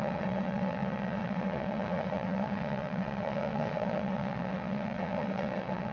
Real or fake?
fake